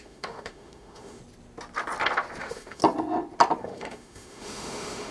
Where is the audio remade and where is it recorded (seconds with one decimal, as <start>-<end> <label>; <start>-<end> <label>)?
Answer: 0.0-1.2 remade; 1.2-2.4 recorded; 2.4-2.8 remade; 2.8-3.6 recorded; 3.6-5.1 remade